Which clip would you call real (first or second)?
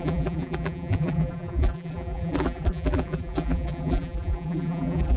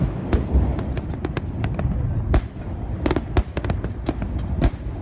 second